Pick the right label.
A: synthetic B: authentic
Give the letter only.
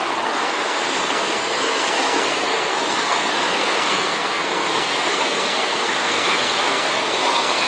A